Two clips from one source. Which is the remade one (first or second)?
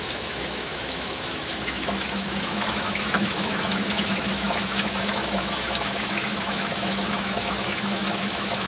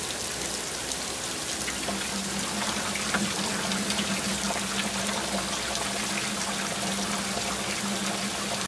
first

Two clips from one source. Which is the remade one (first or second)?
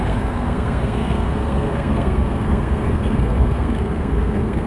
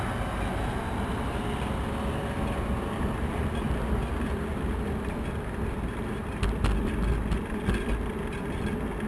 first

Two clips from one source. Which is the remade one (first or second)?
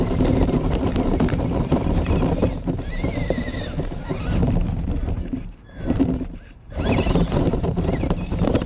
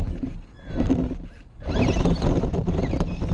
first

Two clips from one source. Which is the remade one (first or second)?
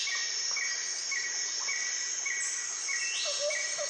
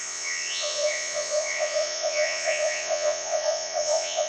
second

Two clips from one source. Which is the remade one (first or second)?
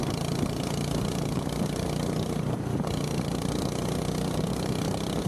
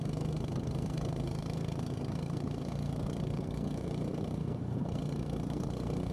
second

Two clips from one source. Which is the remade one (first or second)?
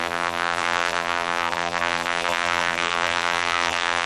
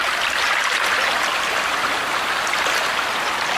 first